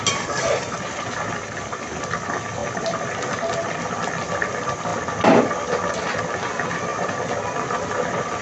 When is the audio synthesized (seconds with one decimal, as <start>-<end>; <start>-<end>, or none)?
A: none